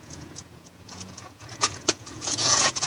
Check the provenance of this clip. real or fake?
fake